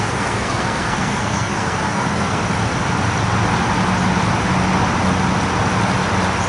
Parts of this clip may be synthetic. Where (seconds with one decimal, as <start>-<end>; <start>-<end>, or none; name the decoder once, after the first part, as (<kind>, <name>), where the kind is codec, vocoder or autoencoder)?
0.0-2.4 (codec, SNAC)